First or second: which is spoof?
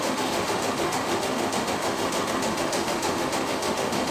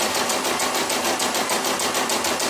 first